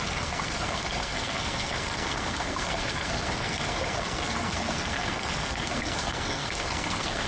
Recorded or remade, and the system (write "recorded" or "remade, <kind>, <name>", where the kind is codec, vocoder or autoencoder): remade, codec, SNAC